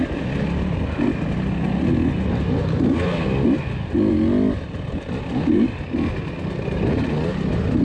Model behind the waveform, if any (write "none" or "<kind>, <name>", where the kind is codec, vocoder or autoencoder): none